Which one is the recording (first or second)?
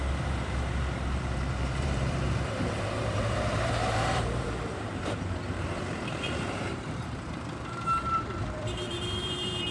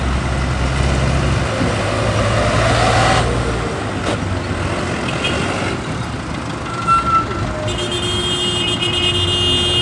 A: second